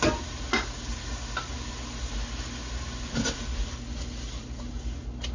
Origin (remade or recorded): recorded